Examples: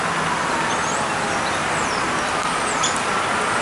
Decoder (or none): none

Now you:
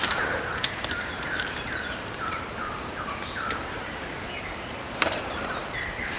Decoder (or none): vocoder, BigVGAN v2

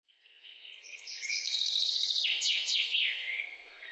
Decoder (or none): codec, SNAC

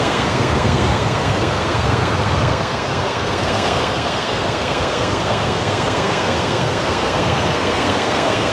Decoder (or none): codec, SNAC